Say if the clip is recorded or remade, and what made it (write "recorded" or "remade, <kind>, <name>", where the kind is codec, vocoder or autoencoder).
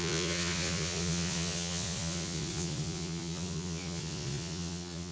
remade, vocoder, Vocos